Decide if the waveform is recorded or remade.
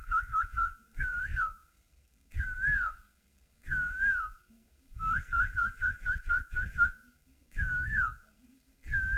remade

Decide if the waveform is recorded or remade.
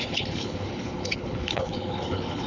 remade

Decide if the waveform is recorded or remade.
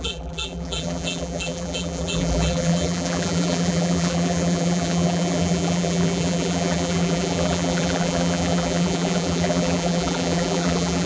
remade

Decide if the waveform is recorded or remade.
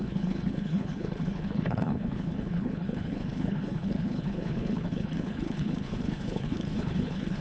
remade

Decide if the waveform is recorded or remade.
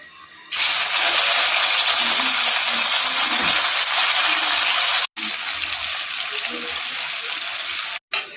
recorded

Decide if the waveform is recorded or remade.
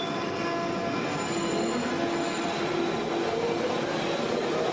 recorded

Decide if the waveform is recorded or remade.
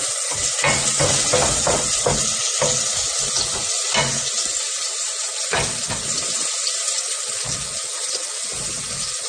recorded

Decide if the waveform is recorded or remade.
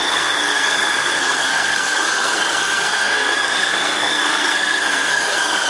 remade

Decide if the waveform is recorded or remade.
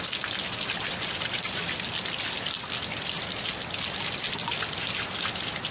recorded